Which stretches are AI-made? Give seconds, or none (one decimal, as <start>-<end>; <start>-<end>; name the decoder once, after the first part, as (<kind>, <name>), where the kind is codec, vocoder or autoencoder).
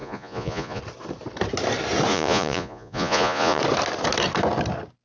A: 0.0-0.8 (vocoder, Vocos); 2.1-3.6